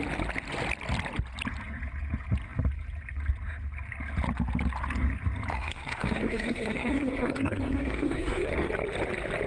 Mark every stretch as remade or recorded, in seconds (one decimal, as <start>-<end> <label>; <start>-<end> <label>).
0.0-5.5 recorded; 5.5-8.7 remade; 8.7-9.5 recorded